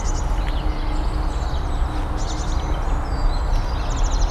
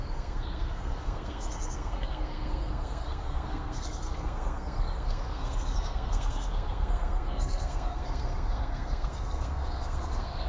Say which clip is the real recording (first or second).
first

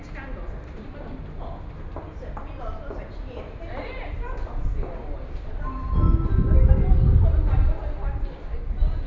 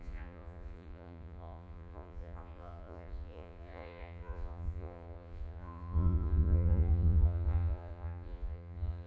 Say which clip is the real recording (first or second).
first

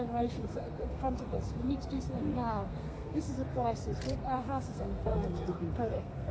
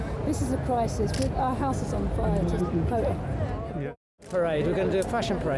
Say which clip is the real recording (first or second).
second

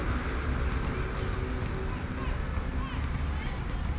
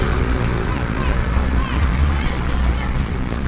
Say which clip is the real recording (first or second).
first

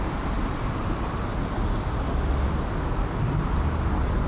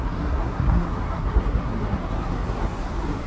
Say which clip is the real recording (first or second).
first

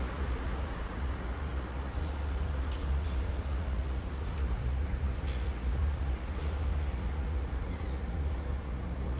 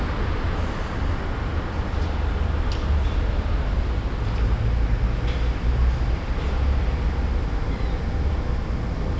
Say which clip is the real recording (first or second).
second